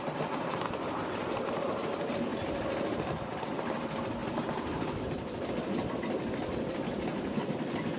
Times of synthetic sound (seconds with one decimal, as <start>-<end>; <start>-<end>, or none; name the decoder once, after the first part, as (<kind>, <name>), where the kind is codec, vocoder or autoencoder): 1.2-1.8 (vocoder, BigVGAN v2); 2.3-3.5